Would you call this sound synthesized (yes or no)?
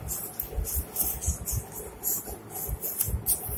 no